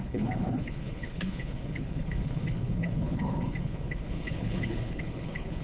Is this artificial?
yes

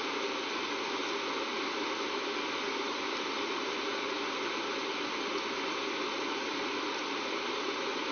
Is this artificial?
no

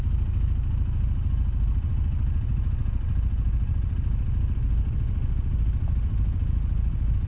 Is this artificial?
no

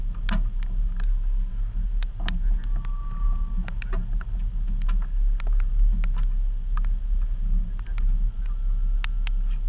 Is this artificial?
no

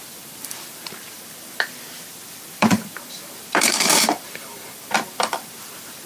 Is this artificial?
yes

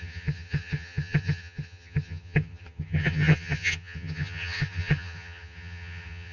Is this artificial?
yes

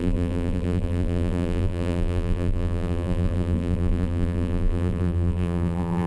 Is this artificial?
yes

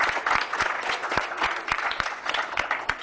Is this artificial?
yes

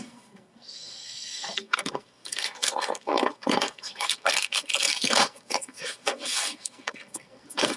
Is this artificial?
yes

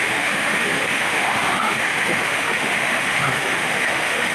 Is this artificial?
yes